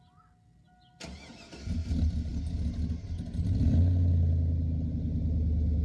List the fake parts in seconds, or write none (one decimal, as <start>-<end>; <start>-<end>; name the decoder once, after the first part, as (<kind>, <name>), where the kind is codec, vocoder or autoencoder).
none